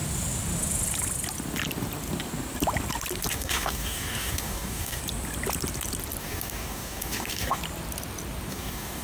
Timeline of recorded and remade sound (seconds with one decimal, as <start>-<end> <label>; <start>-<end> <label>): 0.0-3.3 recorded; 3.3-5.0 remade; 5.0-6.2 recorded; 6.2-7.6 remade; 7.6-8.5 recorded; 8.5-9.0 remade